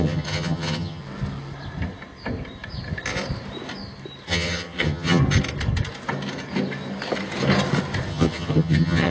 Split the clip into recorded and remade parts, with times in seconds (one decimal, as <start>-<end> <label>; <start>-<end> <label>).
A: 0.0-1.0 remade; 1.0-4.3 recorded; 4.3-5.2 remade; 5.2-8.1 recorded; 8.1-9.1 remade

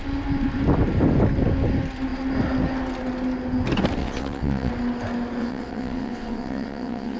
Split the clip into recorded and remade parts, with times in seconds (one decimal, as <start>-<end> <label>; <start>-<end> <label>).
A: 0.0-4.0 recorded; 4.0-4.7 remade; 4.7-5.4 recorded; 5.4-7.2 remade

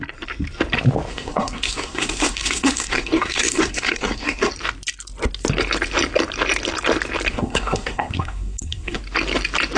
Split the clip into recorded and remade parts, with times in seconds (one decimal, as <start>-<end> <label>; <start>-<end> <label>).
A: 0.0-1.1 recorded; 1.1-4.5 remade; 4.5-7.3 recorded; 7.3-9.0 remade; 9.0-9.8 recorded

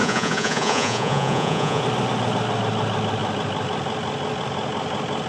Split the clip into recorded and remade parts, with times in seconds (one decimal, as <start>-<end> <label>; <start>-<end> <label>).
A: 0.0-1.8 remade; 1.8-5.3 recorded

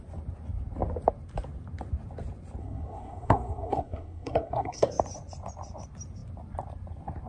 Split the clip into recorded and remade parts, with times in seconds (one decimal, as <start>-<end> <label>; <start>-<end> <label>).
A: 0.0-2.6 recorded; 2.6-4.9 remade; 4.9-7.3 recorded